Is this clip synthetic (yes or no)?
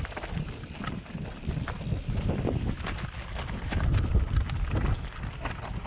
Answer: no